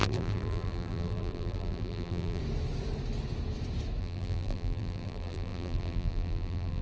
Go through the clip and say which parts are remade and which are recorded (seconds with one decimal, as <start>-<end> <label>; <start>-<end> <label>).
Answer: 0.0-2.4 remade; 2.4-4.0 recorded; 4.0-6.8 remade